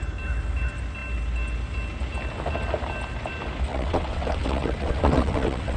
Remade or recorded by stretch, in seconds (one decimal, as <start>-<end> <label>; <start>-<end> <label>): 0.0-3.7 recorded; 3.7-5.8 remade